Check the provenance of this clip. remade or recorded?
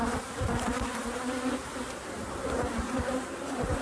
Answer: remade